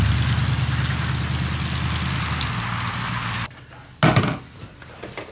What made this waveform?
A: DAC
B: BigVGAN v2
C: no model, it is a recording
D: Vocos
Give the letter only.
C